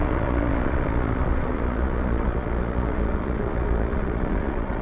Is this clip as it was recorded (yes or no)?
no